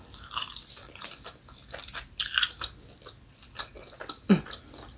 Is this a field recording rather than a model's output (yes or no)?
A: yes